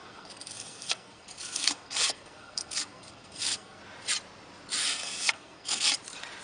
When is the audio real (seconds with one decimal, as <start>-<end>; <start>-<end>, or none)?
3.8-4.9; 5.9-6.4